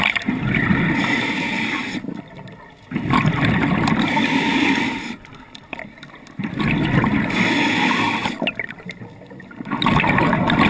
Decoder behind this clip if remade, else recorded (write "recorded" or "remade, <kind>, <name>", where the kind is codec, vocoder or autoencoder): recorded